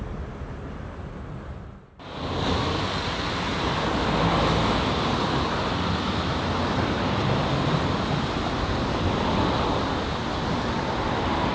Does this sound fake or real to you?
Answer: real